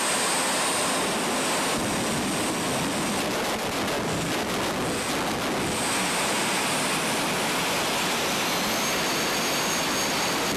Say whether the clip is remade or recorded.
recorded